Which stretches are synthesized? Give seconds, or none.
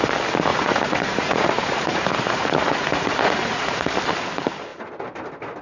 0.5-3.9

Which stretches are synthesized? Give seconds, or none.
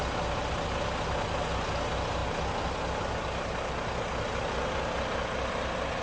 none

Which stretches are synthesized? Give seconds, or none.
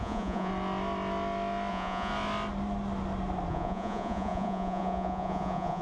0.0-0.5; 1.7-2.1; 3.5-5.8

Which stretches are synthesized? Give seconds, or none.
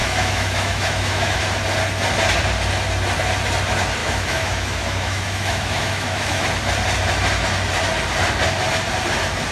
0.0-1.4; 4.0-6.4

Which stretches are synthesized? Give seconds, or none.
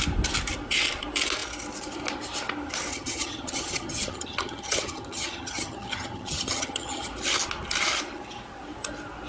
2.9-7.1